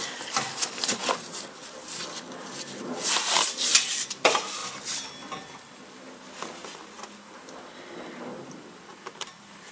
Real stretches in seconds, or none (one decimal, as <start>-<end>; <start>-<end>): 0.0-9.7

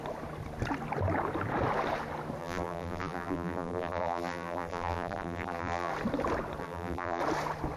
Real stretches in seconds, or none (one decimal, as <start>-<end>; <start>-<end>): 0.0-2.4; 5.9-6.6; 7.2-7.8